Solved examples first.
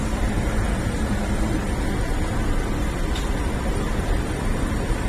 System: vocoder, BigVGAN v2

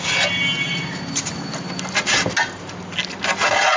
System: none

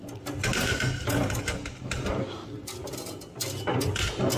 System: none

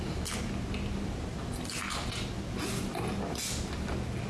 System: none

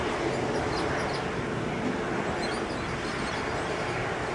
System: none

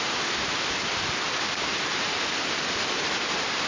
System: none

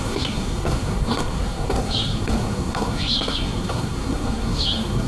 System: codec, SNAC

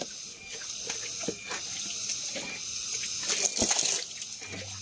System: none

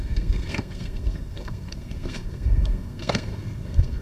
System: codec, SNAC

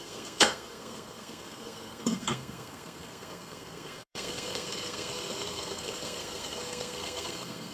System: codec, SNAC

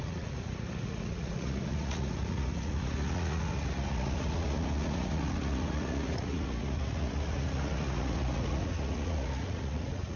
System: vocoder, Vocos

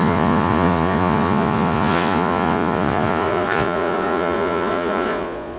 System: vocoder, Vocos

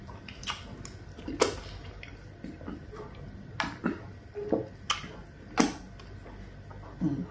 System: none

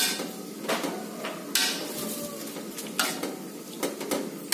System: none